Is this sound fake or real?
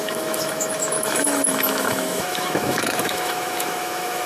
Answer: fake